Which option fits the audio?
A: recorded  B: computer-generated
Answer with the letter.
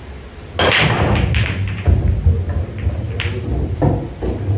A